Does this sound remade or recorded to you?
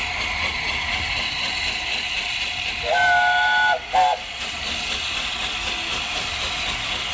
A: recorded